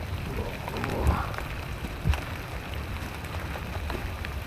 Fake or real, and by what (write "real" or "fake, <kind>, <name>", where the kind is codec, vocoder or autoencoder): fake, vocoder, BigVGAN v2